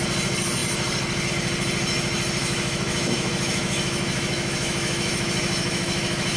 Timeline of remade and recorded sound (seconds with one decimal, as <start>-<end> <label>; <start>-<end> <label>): 0.0-2.4 recorded; 2.4-6.4 remade